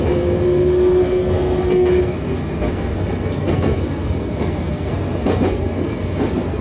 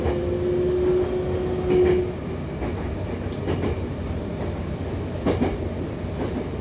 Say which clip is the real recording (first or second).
second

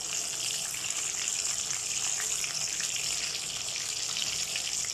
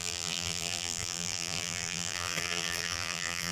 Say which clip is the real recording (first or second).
first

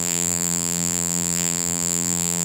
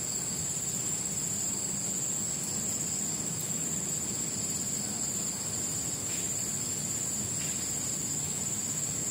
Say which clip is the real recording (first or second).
second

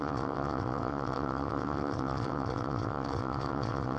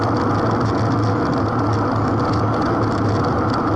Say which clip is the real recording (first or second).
second